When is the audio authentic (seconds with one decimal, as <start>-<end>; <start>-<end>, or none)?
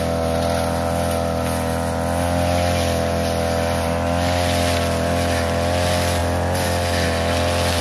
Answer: 0.0-7.8